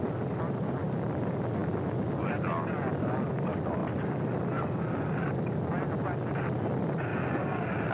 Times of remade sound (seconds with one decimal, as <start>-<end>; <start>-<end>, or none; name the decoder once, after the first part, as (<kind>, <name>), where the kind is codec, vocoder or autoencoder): none

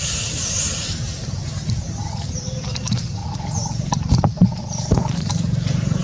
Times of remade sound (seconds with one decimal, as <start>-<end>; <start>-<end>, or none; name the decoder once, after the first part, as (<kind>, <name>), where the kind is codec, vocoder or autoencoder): 0.0-1.6 (vocoder, BigVGAN v2); 2.8-3.2; 4.1-6.0

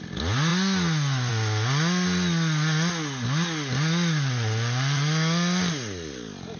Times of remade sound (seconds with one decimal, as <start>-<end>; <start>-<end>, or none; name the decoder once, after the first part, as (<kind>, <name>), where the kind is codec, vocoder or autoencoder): none

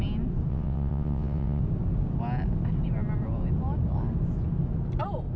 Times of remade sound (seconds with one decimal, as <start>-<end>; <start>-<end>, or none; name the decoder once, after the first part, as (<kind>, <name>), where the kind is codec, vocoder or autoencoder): 0.5-1.6 (vocoder, WaveNeXt)

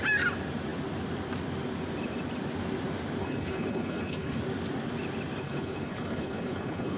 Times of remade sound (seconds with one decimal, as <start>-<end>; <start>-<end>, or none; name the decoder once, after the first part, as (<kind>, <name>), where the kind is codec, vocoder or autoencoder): 3.2-4.4 (codec, HILCodec); 5.4-7.0